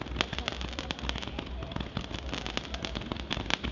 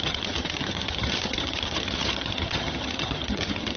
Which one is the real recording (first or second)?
first